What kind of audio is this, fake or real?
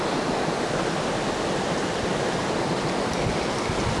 real